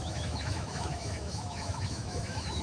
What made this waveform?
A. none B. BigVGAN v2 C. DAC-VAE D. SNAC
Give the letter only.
C